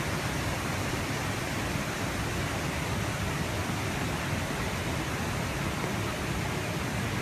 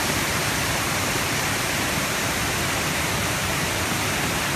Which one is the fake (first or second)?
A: second